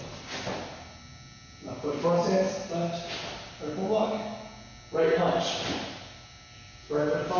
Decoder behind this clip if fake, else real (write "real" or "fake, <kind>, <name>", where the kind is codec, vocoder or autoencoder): real